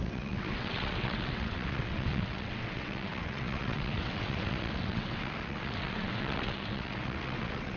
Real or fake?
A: fake